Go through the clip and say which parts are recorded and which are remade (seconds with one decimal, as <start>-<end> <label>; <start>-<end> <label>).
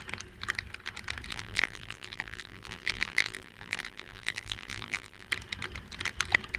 0.0-1.3 recorded; 1.3-5.3 remade; 5.3-6.6 recorded